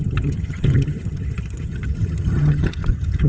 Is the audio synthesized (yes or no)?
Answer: yes